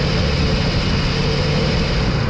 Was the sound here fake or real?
real